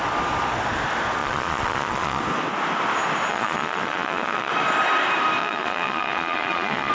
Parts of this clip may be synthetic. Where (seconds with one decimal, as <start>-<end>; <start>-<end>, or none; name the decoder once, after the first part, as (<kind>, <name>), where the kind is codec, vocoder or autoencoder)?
1.2-2.2 (vocoder, Vocos); 3.3-4.5; 5.4-6.9